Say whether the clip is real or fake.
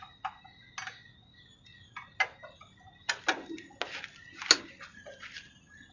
real